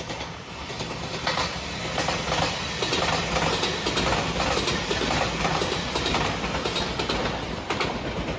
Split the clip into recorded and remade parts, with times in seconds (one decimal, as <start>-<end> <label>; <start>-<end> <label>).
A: 0.0-8.4 recorded